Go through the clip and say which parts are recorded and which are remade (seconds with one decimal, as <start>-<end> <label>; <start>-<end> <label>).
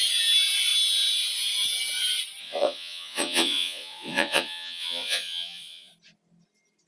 0.0-2.4 recorded; 2.4-5.9 remade; 5.9-6.9 recorded